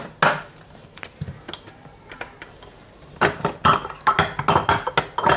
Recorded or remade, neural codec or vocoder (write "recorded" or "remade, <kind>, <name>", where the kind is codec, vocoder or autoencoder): recorded